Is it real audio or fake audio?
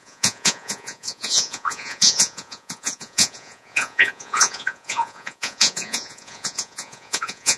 fake